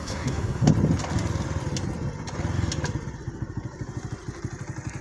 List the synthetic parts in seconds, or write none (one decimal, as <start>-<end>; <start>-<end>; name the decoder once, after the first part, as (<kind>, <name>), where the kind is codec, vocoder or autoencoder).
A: 0.0-0.7 (codec, SNAC)